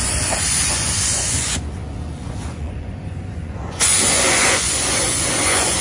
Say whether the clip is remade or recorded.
remade